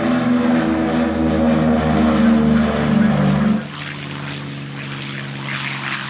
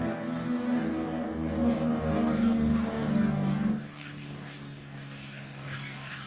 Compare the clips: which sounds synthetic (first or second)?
second